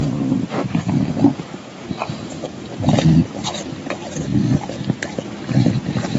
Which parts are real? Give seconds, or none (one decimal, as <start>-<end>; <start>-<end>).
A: 0.0-6.2